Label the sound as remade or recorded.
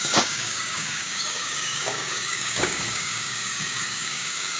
remade